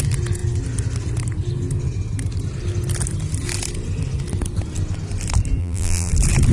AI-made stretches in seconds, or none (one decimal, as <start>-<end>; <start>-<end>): 5.6-6.1